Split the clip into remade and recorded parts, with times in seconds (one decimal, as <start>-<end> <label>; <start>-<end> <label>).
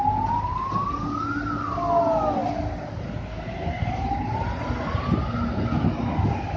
0.0-6.6 recorded